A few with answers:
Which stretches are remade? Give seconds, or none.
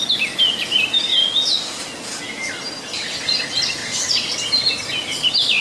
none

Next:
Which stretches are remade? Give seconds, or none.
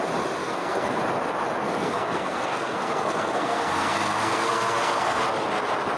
0.4-1.0 (codec, SNAC); 1.6-5.2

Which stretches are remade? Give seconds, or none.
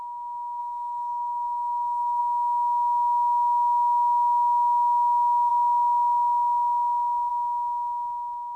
0.6-2.2 (codec, DAC)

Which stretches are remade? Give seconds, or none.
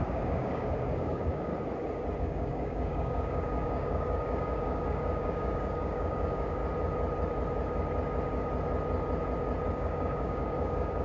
0.0-1.5 (codec, DAC); 2.2-6.6; 9.7-11.0